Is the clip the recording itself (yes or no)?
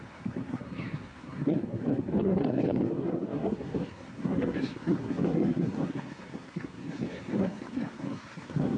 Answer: no